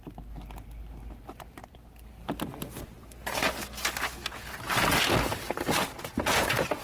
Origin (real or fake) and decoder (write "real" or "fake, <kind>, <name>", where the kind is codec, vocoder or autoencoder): real